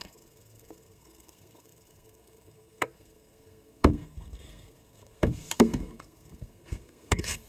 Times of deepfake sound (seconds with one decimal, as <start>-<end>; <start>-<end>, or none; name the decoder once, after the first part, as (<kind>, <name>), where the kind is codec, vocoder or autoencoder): 0.0-7.5 (codec, SNAC)